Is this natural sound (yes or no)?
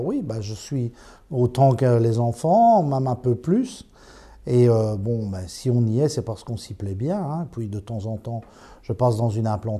yes